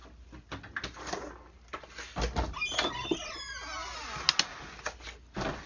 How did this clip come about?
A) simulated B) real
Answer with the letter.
B